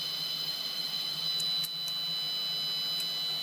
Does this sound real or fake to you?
real